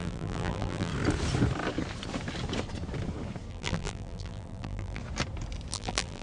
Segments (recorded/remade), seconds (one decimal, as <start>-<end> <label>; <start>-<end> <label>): 0.0-0.9 remade; 0.9-3.5 recorded; 3.5-5.0 remade; 5.0-5.7 recorded; 5.7-6.2 remade